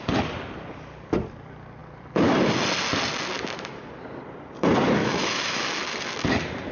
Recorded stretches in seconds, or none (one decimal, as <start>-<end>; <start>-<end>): 0.0-5.0; 5.8-6.7